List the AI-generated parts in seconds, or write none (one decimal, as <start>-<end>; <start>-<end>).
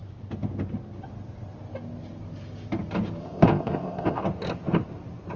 3.2-4.2